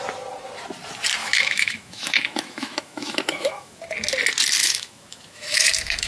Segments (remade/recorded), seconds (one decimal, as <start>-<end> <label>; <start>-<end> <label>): 0.0-1.2 recorded; 1.2-3.8 remade; 3.8-4.6 recorded; 4.6-6.1 remade